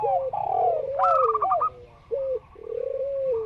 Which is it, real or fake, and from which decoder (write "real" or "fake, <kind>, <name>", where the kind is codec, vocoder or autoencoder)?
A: real